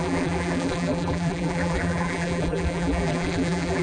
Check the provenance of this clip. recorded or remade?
remade